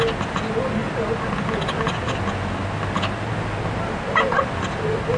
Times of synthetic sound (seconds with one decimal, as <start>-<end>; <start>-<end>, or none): none